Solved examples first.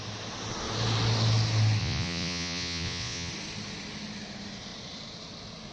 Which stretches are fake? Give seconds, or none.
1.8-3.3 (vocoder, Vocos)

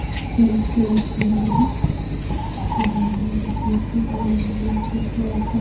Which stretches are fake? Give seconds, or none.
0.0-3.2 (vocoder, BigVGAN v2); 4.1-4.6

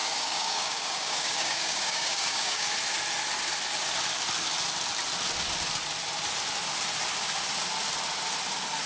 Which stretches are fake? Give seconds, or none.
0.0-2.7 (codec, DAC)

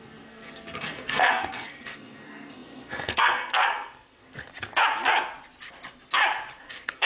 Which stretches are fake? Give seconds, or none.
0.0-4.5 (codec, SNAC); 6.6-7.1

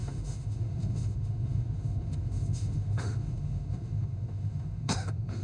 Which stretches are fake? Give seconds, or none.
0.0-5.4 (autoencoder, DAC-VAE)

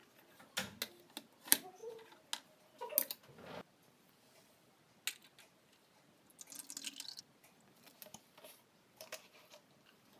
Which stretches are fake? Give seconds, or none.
none